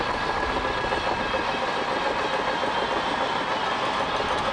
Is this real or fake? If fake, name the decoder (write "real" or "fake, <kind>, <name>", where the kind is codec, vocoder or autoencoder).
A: real